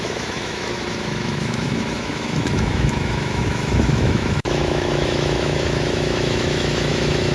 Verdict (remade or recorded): remade